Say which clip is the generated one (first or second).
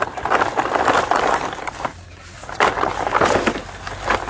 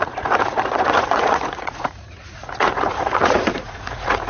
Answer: second